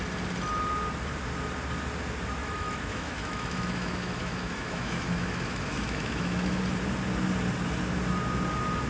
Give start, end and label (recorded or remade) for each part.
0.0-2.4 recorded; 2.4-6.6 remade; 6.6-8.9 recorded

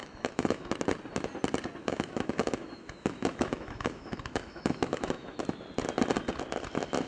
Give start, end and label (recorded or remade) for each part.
0.0-0.7 remade; 0.7-1.8 recorded; 1.8-5.4 remade; 5.4-7.1 recorded

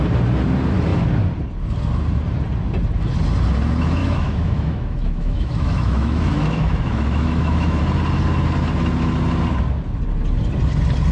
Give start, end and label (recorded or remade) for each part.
0.0-4.0 recorded; 4.0-7.8 remade; 7.8-11.1 recorded